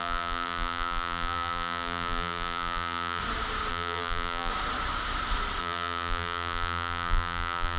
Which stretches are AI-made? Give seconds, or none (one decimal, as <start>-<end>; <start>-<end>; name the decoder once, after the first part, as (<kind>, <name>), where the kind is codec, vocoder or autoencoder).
0.0-3.2 (vocoder, BigVGAN v2); 3.7-4.5; 5.6-7.8